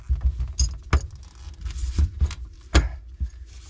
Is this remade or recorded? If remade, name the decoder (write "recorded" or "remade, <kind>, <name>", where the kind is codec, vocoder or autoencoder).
recorded